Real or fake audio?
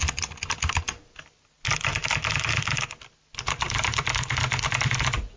real